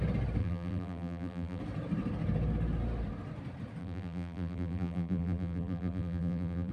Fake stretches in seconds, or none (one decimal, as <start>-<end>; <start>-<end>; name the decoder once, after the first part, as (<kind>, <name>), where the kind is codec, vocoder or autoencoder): 0.4-1.6 (vocoder, BigVGAN v2); 3.8-6.7